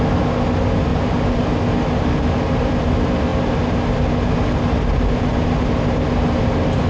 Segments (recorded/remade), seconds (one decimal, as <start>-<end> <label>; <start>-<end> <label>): 0.0-6.9 recorded